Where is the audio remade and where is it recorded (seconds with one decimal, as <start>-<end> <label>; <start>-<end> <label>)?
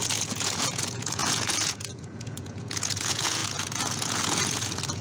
0.0-5.0 remade